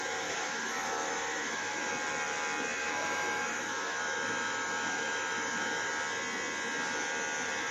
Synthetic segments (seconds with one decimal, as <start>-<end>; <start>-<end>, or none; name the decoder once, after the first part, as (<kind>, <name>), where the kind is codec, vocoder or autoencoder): 0.0-1.9 (autoencoder, DAC-VAE); 2.8-5.9